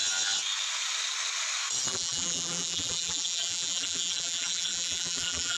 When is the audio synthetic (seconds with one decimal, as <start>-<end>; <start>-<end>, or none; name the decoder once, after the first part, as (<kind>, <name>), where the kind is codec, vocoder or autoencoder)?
1.9-5.6 (vocoder, BigVGAN v2)

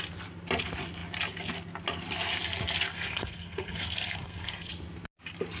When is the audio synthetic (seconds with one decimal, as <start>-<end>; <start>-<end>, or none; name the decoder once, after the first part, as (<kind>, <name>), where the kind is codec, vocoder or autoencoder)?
2.9-4.7 (codec, SNAC)

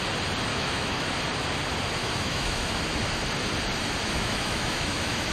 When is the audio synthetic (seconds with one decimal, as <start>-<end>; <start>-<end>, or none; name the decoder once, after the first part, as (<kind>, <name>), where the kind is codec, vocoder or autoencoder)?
0.5-1.1 (autoencoder, DAC-VAE); 2.0-2.8; 4.0-5.3

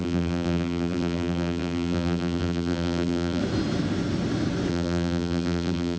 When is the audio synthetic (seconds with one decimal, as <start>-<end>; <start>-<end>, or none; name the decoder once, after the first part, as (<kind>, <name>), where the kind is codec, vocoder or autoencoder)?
0.0-3.4 (vocoder, BigVGAN v2); 4.7-6.0

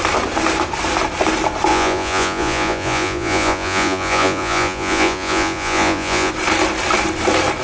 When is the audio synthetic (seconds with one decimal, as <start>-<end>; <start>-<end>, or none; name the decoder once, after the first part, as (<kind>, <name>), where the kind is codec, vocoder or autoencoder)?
1.7-6.3 (vocoder, Vocos)

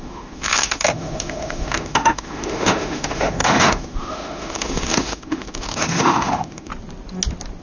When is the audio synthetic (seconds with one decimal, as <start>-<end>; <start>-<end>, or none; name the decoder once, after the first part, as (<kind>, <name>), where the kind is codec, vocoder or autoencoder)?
0.0-6.7 (autoencoder, DAC-VAE)

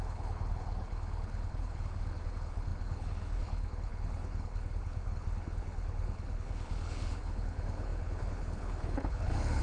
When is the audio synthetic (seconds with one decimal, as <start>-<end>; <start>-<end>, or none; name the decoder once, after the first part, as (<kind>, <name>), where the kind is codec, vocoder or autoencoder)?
0.0-9.6 (codec, HILCodec)